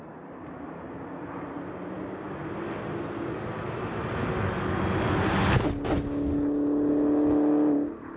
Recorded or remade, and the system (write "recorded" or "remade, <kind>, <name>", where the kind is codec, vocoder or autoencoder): recorded